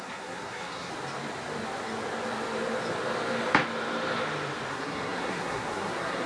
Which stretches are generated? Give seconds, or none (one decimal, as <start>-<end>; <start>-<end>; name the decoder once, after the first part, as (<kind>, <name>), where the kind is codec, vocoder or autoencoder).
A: 0.0-0.9 (codec, SNAC); 4.7-6.3